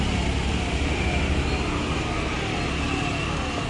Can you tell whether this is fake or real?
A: real